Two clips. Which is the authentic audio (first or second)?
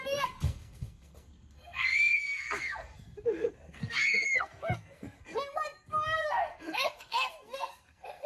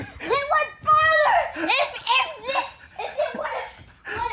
second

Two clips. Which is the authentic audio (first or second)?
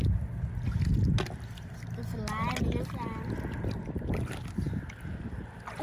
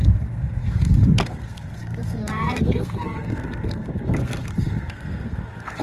first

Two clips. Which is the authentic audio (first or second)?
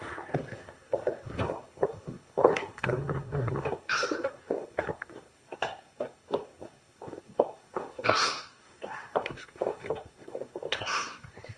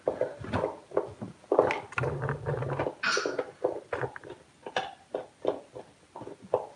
second